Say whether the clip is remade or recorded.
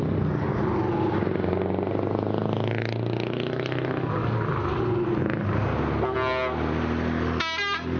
recorded